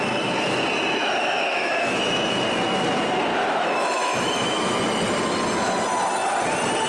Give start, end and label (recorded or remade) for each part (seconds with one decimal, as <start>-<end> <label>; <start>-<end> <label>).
0.0-1.0 recorded; 1.0-2.1 remade; 2.1-3.3 recorded; 3.3-4.8 remade; 4.8-6.9 recorded